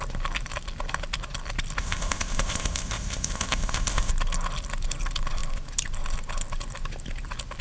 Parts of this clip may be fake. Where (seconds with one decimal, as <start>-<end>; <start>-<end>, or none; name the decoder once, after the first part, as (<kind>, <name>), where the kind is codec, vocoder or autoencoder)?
1.8-4.1 (codec, ZipCodec)